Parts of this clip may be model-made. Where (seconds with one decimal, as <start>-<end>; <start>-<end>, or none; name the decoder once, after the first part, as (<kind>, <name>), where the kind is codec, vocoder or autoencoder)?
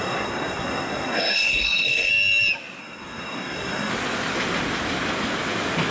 0.0-2.1 (codec, SNAC); 2.8-3.9